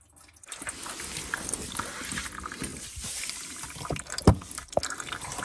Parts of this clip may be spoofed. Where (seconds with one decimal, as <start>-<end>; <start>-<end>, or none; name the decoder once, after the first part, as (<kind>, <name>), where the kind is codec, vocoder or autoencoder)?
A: 2.7-3.4 (vocoder, BigVGAN v2)